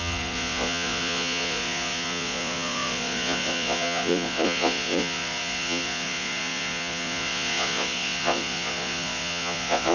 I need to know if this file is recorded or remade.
remade